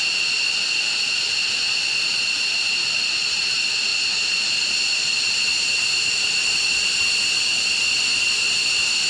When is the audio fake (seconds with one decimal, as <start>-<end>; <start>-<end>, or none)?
none